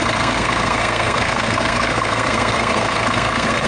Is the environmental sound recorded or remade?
remade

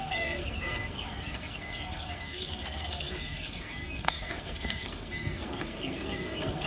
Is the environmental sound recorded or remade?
remade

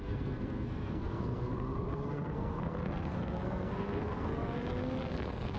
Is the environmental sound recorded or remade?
remade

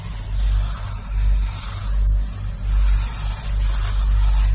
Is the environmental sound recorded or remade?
recorded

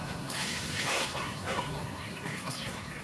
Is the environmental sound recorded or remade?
remade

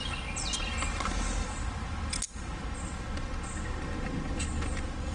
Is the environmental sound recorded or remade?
recorded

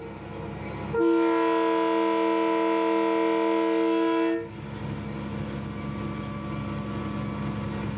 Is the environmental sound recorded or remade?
recorded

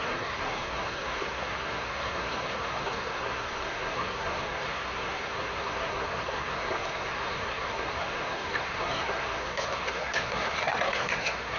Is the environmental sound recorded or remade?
remade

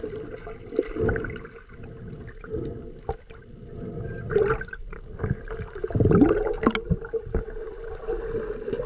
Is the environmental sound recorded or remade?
recorded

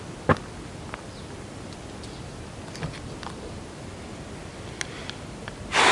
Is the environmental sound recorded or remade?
recorded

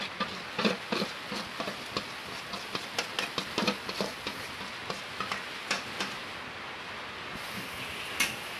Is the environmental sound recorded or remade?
recorded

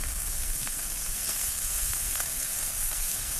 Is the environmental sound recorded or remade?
remade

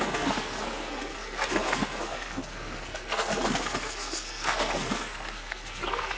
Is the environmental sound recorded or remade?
remade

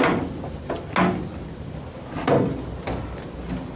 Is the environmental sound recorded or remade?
recorded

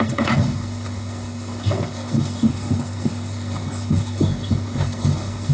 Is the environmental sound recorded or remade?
remade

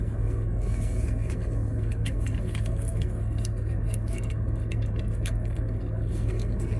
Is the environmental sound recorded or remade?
remade